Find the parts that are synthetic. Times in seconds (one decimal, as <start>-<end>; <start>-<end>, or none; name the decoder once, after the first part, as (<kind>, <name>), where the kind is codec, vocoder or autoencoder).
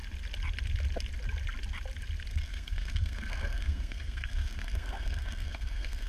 2.3-6.1 (codec, SNAC)